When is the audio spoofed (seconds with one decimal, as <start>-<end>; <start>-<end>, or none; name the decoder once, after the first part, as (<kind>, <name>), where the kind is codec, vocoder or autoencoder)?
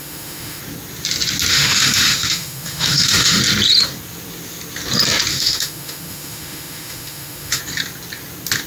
0.0-0.6 (autoencoder, DAC-VAE); 1.5-3.4; 5.3-7.6